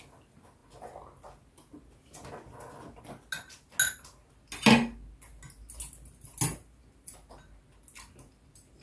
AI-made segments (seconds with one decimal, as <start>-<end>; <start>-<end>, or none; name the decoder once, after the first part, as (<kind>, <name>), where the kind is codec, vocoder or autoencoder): none